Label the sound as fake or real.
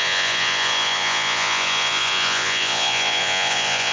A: fake